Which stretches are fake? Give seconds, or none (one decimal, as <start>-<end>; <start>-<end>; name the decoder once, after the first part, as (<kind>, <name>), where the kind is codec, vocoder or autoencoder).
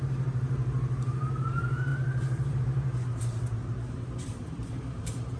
0.0-5.4 (vocoder, BigVGAN v2)